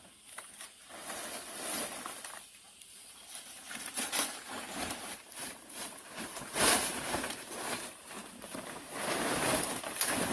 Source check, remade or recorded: remade